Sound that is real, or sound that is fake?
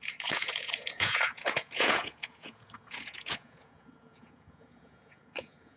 fake